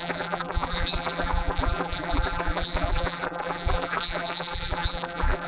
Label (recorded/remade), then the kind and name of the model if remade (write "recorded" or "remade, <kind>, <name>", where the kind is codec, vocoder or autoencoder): remade, vocoder, BigVGAN v2